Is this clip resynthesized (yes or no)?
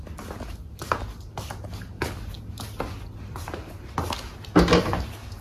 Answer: no